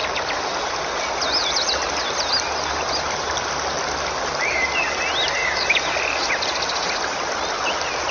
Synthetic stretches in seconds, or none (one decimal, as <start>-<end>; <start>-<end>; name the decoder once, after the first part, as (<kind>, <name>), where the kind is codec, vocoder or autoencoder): 0.0-0.7 (vocoder, BigVGAN v2); 1.4-3.3; 5.4-7.1